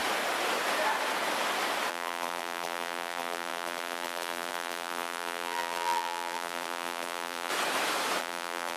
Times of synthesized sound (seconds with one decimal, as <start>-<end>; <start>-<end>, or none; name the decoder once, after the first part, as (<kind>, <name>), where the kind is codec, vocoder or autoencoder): 1.9-7.5 (vocoder, BigVGAN v2); 8.2-8.8